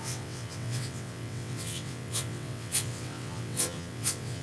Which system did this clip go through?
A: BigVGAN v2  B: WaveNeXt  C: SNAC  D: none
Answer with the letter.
B